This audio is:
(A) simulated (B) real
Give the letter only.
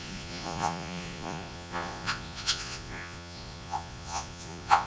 A